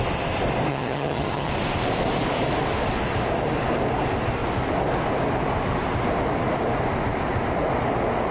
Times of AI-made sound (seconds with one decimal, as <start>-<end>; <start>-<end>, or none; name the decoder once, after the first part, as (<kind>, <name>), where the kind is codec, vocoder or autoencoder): 0.7-1.5 (vocoder, HiFi-GAN)